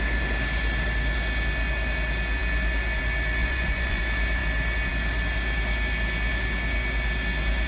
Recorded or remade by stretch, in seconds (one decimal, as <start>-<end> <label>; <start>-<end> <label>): 0.0-3.4 recorded; 3.4-4.0 remade; 4.0-7.7 recorded